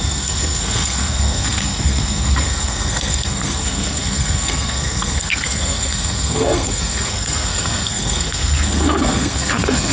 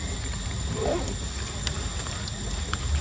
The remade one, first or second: first